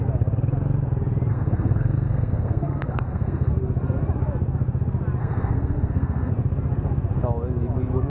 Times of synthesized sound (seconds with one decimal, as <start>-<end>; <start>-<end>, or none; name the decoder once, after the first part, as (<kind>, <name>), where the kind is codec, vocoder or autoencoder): 1.3-3.5 (codec, SNAC); 5.2-6.3